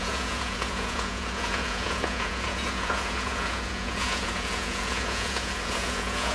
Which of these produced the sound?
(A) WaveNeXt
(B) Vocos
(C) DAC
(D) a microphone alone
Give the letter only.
B